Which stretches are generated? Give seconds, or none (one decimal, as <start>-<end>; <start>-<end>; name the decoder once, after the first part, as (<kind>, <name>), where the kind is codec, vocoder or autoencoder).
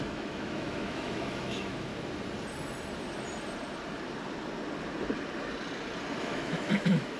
0.0-1.9 (autoencoder, DAC-VAE); 6.2-7.2